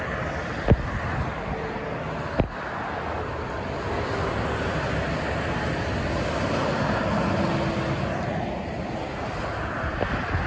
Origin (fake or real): real